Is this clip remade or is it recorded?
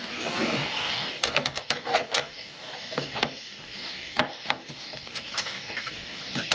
remade